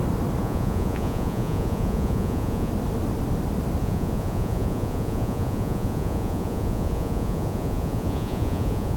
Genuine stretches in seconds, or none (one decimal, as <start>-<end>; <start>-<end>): 0.0-0.4; 2.7-3.8